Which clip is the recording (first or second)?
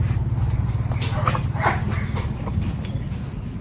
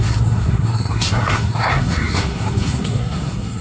first